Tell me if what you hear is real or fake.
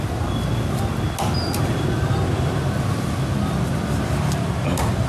real